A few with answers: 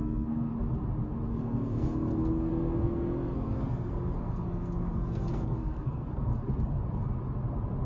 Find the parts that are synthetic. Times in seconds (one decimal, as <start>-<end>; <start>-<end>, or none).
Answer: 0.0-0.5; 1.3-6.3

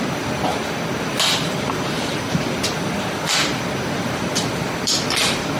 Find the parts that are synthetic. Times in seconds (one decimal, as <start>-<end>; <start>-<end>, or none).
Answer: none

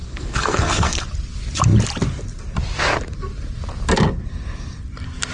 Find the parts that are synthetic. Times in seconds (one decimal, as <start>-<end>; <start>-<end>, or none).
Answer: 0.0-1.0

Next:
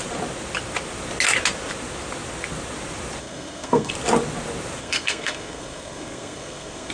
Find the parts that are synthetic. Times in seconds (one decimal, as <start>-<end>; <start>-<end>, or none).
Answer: 3.2-3.9; 4.8-6.9